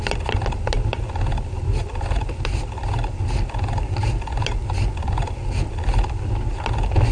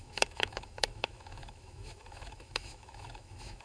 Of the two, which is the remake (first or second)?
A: second